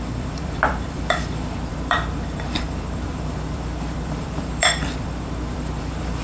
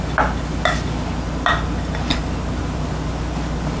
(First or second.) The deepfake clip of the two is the first